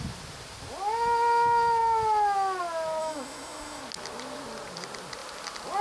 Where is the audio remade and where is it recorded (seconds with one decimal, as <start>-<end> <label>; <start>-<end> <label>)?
0.0-3.0 recorded; 3.0-3.8 remade; 3.8-5.8 recorded